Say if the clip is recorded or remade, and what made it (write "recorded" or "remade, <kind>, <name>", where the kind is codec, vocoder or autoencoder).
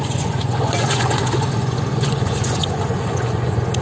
remade, vocoder, Vocos